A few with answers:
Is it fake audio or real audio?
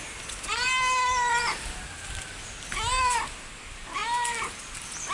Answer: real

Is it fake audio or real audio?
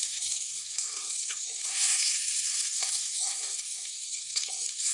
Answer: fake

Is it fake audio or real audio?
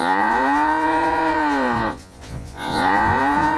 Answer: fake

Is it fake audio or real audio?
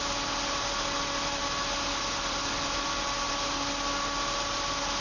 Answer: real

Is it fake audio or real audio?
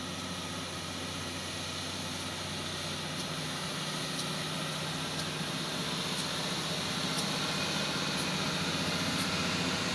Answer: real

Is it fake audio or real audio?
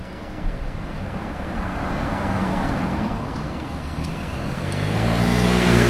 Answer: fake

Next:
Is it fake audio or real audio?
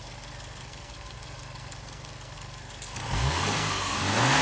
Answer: fake